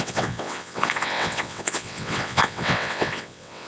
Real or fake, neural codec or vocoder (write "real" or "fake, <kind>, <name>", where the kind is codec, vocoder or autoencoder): fake, vocoder, WaveNeXt